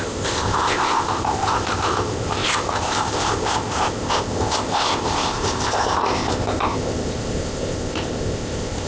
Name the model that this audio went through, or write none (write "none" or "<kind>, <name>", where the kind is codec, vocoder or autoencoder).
codec, ZipCodec